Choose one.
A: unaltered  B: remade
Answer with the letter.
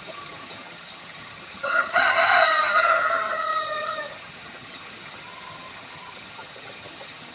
B